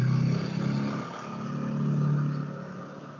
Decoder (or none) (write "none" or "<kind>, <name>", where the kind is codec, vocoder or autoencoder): none